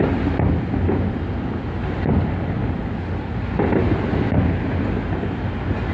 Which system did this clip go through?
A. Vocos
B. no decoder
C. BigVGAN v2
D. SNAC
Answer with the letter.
B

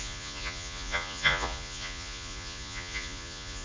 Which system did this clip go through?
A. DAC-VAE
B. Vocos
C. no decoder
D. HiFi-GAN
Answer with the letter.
B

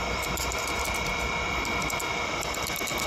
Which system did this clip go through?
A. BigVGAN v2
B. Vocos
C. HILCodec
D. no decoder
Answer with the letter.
D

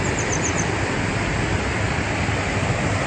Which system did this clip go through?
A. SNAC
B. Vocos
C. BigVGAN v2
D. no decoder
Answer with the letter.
D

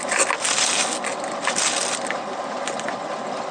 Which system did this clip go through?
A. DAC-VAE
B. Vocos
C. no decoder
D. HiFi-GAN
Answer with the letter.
C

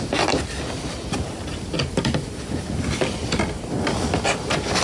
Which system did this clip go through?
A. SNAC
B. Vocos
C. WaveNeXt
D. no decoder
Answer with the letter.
D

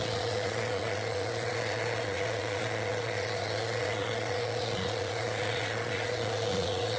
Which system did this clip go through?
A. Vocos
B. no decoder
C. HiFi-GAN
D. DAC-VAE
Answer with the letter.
A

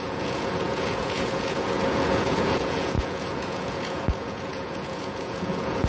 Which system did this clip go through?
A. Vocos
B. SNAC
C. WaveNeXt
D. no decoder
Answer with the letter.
A